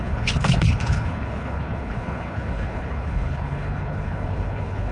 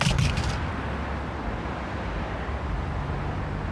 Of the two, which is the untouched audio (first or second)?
second